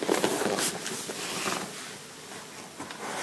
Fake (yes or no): no